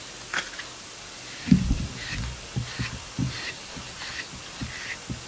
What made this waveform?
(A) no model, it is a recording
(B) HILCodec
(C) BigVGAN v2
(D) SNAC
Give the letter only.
A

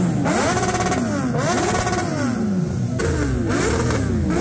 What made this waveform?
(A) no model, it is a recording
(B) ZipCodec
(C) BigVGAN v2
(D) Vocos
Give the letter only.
A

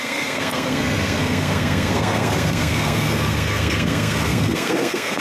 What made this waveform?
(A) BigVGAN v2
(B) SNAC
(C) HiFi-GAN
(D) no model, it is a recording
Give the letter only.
B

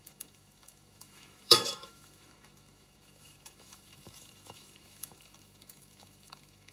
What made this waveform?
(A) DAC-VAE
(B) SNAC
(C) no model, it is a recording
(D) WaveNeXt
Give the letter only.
A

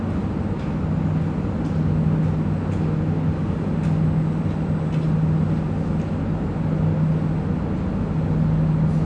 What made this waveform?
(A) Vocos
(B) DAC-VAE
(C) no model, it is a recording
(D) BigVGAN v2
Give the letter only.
C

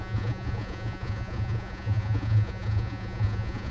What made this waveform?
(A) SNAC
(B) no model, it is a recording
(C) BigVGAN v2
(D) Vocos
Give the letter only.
D